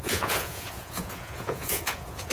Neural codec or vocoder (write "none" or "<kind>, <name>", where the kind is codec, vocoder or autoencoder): vocoder, Vocos